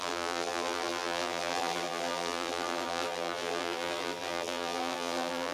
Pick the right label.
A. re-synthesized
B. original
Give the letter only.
A